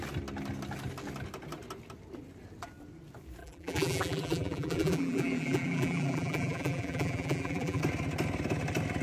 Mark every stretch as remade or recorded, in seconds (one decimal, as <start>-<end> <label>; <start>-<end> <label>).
0.0-3.4 recorded; 3.4-7.8 remade; 7.8-9.0 recorded